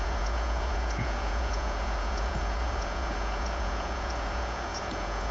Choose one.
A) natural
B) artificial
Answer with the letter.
B